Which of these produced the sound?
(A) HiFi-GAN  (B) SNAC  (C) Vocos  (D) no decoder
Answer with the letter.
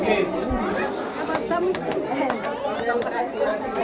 D